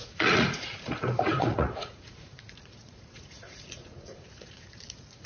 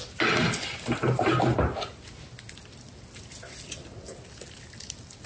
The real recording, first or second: second